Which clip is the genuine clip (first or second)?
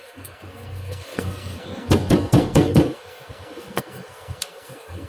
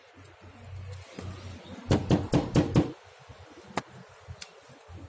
second